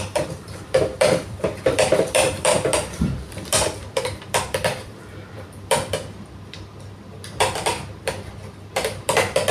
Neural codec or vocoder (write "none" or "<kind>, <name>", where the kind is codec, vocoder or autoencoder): vocoder, BigVGAN v2